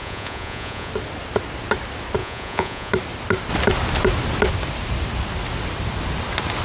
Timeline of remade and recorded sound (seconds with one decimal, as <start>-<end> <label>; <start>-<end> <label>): 0.0-0.9 remade; 0.9-2.2 recorded; 2.2-2.9 remade; 2.9-6.6 recorded